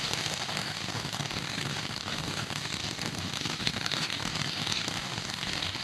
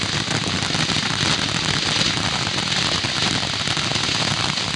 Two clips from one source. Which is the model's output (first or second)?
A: first